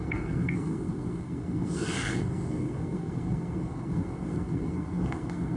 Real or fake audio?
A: fake